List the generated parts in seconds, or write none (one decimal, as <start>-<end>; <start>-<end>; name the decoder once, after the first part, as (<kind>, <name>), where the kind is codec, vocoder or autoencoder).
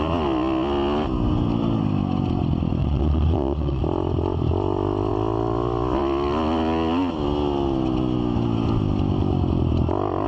2.8-3.8 (vocoder, Vocos)